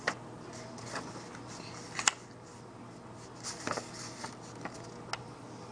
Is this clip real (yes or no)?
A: yes